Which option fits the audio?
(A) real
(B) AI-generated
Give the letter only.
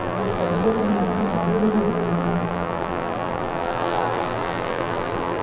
B